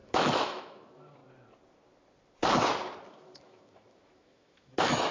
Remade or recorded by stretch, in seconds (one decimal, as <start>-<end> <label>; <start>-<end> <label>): 0.0-1.2 remade; 1.2-3.1 recorded; 3.1-5.1 remade